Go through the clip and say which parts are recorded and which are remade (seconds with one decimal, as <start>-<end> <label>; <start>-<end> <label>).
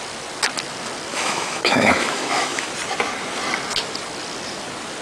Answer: 0.0-1.1 recorded; 1.1-2.7 remade; 2.7-5.0 recorded